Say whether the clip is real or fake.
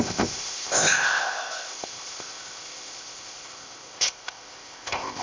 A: fake